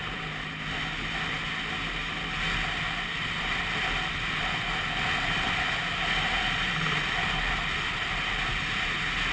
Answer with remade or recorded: recorded